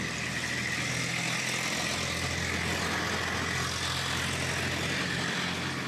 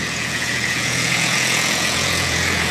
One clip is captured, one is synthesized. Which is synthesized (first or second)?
second